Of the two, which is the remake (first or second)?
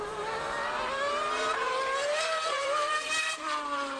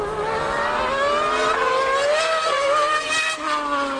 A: first